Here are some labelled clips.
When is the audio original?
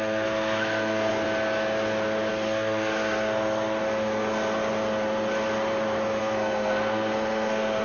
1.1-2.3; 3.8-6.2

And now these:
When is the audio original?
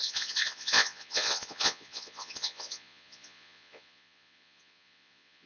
none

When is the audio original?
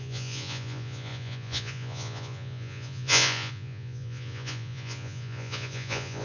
none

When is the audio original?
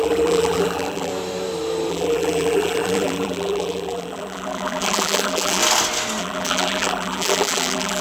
1.1-1.9; 5.6-6.2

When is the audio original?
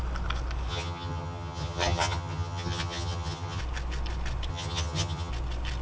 0.0-0.7; 3.6-4.5; 5.3-5.8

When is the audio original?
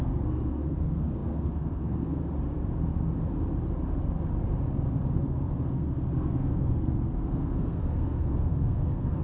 2.2-5.2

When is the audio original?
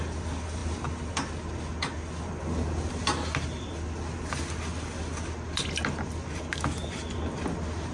0.0-7.9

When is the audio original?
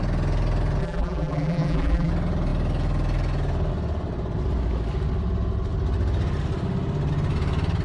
0.0-0.8; 2.1-7.8